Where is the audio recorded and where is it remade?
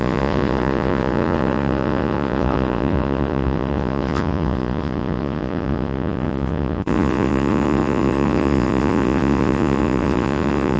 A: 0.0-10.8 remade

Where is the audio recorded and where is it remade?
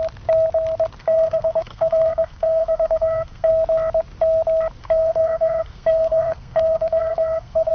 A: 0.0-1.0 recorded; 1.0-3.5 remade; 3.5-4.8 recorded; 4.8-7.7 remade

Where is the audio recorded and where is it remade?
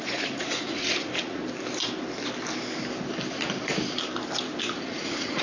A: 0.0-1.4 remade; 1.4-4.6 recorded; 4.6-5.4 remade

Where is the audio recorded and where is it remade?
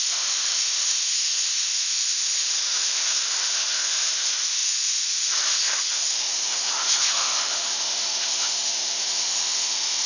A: 0.0-10.1 remade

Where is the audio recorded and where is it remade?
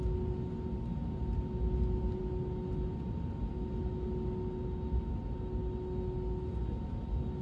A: 0.0-7.4 recorded